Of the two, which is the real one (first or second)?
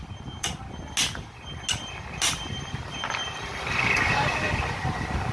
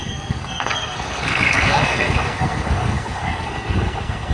first